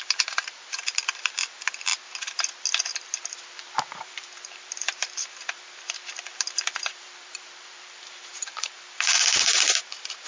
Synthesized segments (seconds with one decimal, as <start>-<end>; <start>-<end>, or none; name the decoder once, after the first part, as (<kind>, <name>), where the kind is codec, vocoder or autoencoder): 0.0-1.9 (vocoder, BigVGAN v2); 3.2-10.3